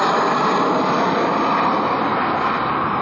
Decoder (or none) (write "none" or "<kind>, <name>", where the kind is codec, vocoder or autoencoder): none